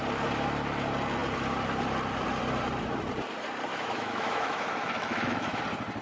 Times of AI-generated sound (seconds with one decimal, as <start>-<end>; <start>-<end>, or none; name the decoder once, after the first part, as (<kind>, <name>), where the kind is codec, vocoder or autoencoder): 3.7-5.6 (autoencoder, DAC-VAE)